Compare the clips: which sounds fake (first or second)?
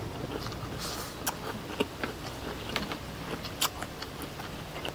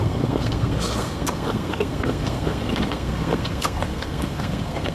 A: second